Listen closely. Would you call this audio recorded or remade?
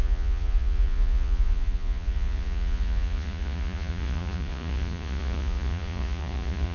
remade